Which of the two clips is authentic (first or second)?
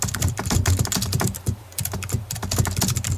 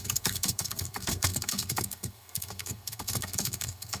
first